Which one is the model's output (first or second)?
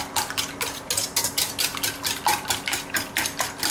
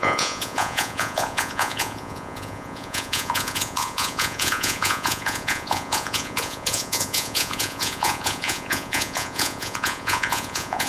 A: second